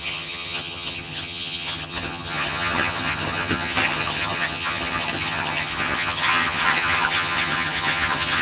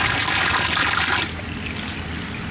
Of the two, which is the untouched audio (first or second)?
second